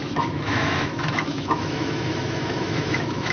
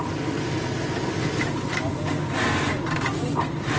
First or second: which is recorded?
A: second